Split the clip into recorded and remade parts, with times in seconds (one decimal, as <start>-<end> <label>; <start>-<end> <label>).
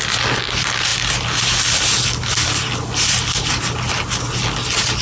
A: 0.0-5.0 recorded